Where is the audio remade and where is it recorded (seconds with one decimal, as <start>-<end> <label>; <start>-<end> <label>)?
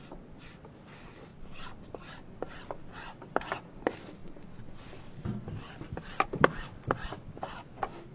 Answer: 0.0-1.3 remade; 1.3-2.9 recorded; 2.9-4.2 remade; 4.2-5.9 recorded; 5.9-8.1 remade